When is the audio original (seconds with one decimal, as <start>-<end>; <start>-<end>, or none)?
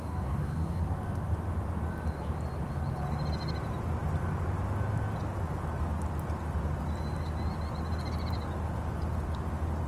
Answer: 0.8-9.9